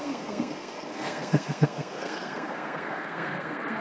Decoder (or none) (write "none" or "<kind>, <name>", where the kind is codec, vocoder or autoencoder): codec, SNAC